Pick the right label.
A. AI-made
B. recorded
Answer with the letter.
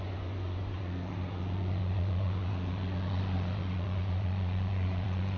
A